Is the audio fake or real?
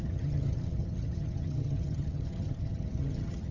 fake